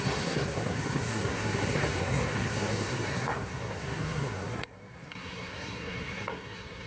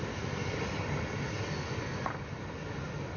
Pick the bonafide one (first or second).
second